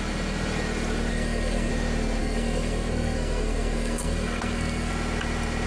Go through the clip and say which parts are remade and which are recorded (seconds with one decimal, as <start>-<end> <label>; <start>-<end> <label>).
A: 0.0-1.1 recorded; 1.1-1.7 remade; 1.7-2.2 recorded; 2.2-4.9 remade; 4.9-5.7 recorded